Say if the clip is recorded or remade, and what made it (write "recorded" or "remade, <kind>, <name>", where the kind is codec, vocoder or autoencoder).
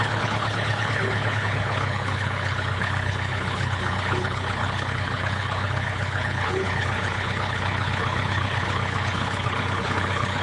remade, codec, HILCodec